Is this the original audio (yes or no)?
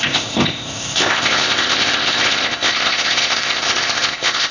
no